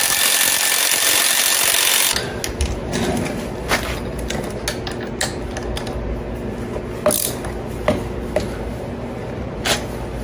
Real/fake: real